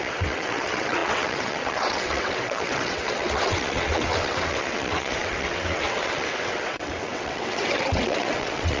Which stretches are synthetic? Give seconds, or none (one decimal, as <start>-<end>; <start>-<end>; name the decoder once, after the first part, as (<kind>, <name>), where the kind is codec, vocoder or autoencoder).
0.0-8.8 (vocoder, WaveNeXt)